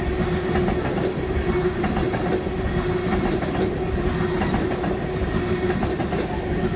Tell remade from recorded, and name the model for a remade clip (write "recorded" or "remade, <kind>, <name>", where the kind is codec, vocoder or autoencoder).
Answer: recorded